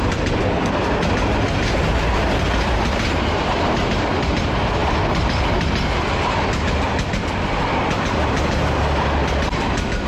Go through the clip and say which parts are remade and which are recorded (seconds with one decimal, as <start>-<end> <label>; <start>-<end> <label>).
0.0-3.4 recorded; 3.4-4.3 remade; 4.3-10.1 recorded